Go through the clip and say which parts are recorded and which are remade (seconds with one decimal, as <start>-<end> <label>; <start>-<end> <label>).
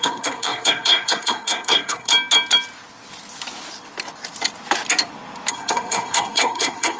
0.0-2.1 remade; 2.1-5.5 recorded; 5.5-7.0 remade